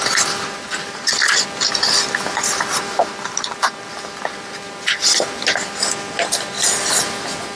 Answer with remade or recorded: recorded